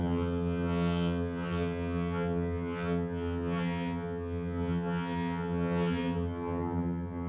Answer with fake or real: fake